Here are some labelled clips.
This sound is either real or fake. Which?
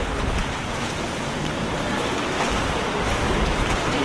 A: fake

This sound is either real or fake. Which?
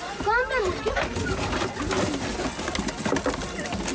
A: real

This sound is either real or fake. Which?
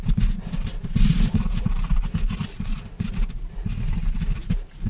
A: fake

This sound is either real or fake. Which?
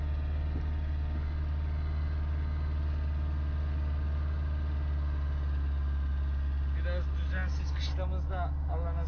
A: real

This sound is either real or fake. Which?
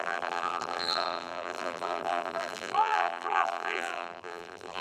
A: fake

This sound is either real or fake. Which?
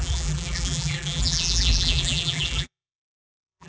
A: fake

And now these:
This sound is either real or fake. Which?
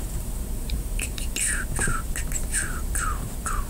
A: fake